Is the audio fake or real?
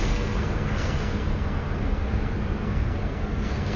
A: fake